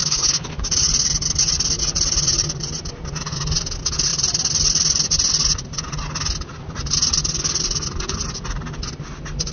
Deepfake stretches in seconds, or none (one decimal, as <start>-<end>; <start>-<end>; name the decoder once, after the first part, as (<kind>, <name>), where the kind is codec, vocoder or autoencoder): 0.0-0.6 (codec, HILCodec)